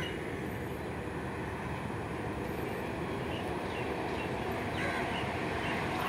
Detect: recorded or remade recorded